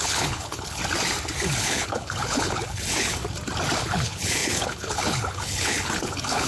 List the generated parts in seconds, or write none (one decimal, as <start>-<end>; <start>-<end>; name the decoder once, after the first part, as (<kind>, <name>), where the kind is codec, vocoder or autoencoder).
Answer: 0.0-0.8 (codec, HILCodec); 1.6-3.2; 3.8-6.5